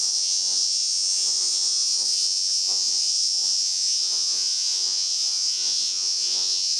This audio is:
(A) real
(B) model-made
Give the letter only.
B